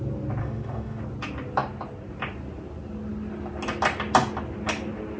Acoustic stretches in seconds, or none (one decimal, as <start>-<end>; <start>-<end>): 0.0-0.4; 1.0-5.2